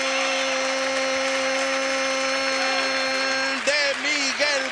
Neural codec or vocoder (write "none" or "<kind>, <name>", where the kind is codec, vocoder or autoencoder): none